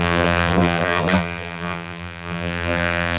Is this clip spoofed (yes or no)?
yes